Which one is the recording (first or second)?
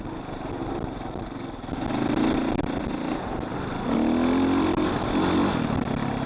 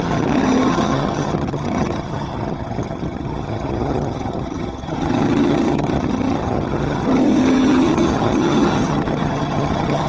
first